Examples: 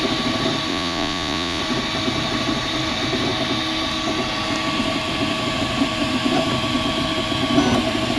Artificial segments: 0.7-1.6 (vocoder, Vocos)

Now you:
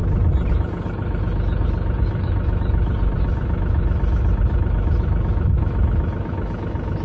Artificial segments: 0.5-7.0 (autoencoder, DAC-VAE)

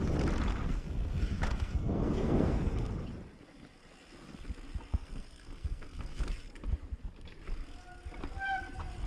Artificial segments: 0.5-2.9 (codec, SNAC); 4.9-6.2

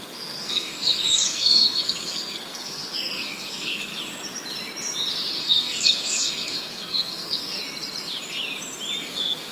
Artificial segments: 0.0-3.9 (codec, SNAC); 5.4-7.6; 9.0-9.5

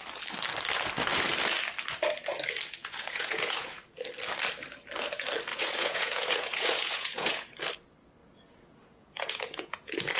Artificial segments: 2.8-3.8 (vocoder, Vocos); 5.5-7.5; 8.2-10.2